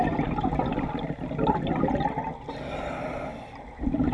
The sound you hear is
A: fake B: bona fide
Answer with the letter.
B